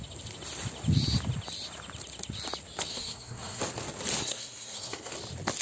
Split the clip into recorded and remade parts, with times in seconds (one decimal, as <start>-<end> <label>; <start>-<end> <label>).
0.0-2.9 recorded; 2.9-3.6 remade; 3.6-4.2 recorded; 4.2-5.1 remade; 5.1-5.6 recorded